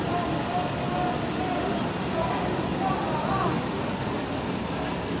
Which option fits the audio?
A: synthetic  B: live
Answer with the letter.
B